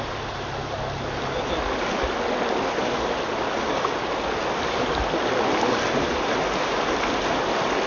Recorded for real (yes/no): yes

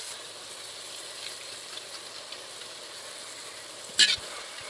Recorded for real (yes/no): yes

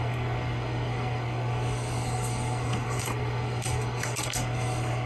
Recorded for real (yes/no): no